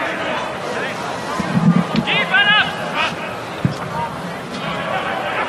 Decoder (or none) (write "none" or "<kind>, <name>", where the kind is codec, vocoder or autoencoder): none